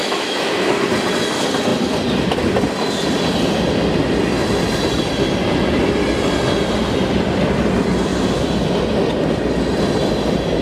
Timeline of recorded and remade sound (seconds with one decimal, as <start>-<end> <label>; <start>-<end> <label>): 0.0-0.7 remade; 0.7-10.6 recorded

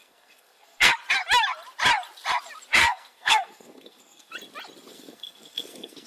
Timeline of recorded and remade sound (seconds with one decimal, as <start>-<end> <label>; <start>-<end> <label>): 0.0-0.9 remade; 0.9-2.8 recorded; 2.8-4.3 remade; 4.3-4.9 recorded; 4.9-6.1 remade

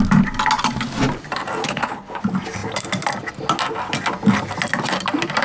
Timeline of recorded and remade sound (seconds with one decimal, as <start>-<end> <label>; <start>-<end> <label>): 0.0-1.6 recorded; 1.6-2.2 remade; 2.2-5.4 recorded

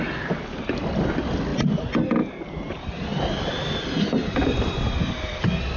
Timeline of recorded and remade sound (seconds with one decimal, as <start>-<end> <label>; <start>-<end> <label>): 0.0-5.8 recorded